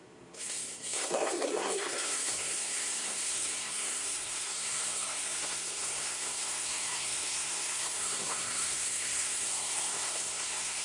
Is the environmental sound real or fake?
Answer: fake